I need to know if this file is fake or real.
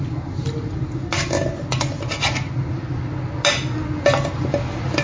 real